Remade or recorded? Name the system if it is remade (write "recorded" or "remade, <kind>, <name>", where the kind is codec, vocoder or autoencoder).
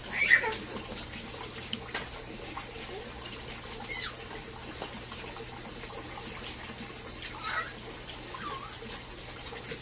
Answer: recorded